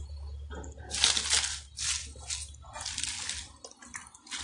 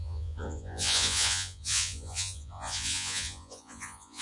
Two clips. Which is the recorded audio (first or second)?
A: first